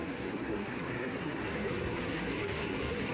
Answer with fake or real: fake